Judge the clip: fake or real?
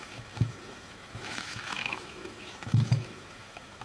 fake